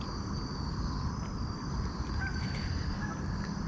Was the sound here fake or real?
real